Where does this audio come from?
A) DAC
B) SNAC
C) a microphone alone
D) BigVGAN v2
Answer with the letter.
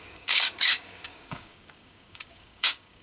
A